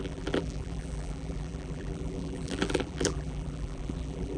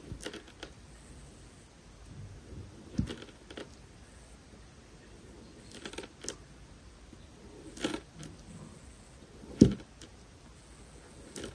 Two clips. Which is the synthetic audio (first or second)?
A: first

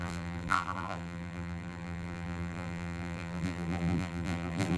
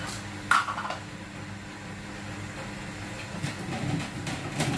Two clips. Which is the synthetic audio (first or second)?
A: first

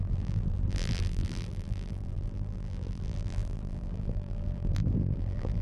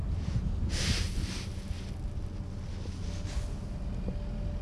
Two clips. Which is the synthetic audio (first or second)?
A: first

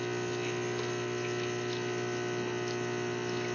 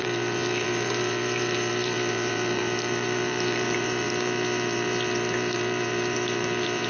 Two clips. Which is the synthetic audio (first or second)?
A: second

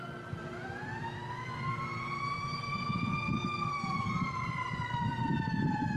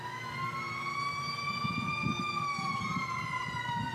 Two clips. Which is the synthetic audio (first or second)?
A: first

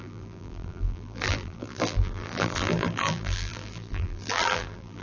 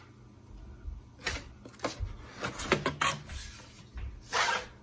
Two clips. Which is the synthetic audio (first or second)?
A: first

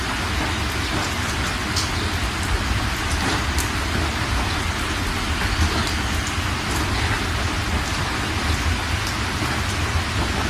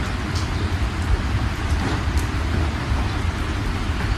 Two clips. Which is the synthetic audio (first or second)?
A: second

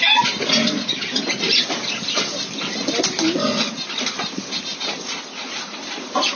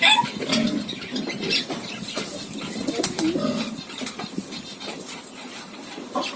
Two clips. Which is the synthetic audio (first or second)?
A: second